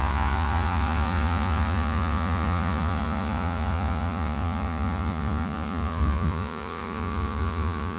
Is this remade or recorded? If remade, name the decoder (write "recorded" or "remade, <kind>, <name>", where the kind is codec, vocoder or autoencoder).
remade, vocoder, Vocos